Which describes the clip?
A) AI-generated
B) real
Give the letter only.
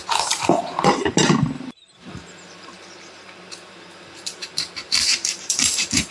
A